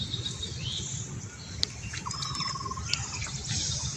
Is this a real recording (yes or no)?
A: no